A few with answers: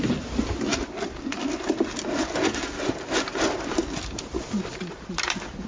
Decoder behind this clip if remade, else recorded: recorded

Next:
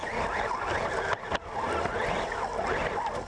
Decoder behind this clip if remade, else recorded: recorded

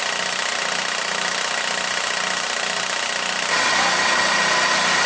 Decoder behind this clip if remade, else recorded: recorded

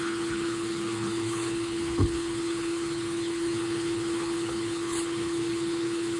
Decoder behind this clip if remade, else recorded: remade, codec, HILCodec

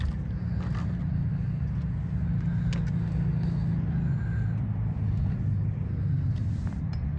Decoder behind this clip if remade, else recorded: recorded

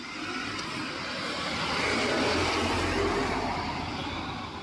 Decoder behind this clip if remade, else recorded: recorded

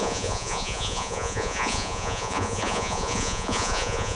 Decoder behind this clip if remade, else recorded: remade, vocoder, Vocos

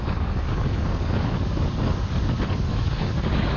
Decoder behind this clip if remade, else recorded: remade, codec, DAC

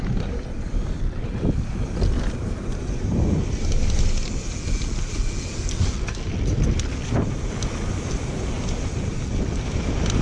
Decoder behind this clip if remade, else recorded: recorded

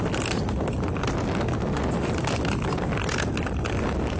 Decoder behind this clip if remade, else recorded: recorded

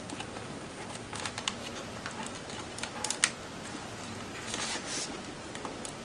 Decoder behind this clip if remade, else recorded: recorded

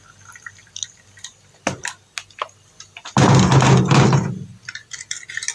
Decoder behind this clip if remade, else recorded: recorded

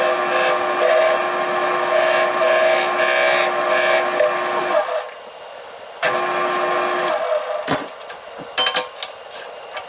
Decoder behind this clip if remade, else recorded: recorded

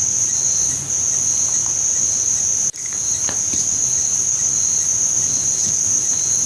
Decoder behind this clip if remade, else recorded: recorded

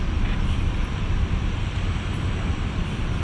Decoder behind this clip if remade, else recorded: remade, vocoder, BigVGAN v2